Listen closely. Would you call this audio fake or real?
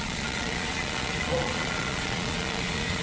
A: fake